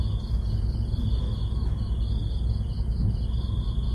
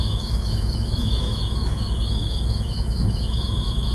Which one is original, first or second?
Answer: first